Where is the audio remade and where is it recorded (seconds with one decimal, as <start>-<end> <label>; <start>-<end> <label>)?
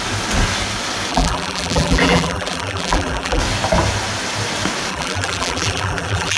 0.0-1.1 recorded; 1.1-3.4 remade; 3.4-4.9 recorded; 4.9-6.4 remade